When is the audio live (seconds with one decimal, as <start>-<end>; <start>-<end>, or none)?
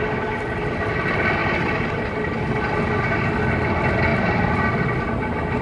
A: 0.0-5.6